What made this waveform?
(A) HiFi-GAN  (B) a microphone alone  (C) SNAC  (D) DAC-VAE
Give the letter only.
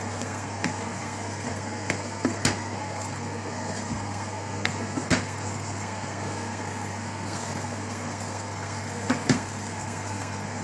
C